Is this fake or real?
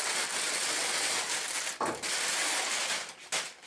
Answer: real